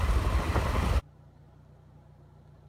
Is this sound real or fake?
real